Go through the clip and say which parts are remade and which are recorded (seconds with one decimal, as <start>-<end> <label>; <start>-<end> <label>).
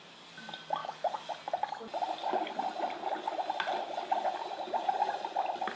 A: 0.0-0.8 recorded; 0.8-1.3 remade; 1.3-5.8 recorded